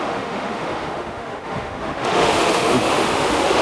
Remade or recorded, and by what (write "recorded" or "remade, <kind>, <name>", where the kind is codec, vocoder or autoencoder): remade, autoencoder, DAC-VAE